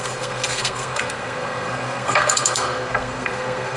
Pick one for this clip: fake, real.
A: fake